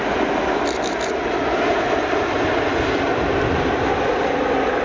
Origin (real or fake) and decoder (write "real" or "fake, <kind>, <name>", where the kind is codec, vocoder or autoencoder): real